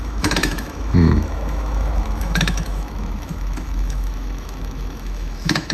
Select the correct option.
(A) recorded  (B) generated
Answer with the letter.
B